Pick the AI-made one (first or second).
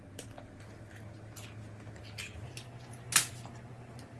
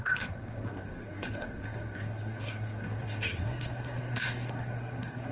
second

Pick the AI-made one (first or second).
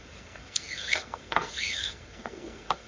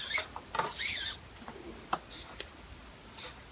first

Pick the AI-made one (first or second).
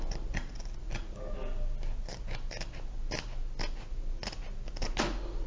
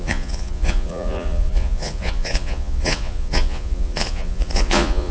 second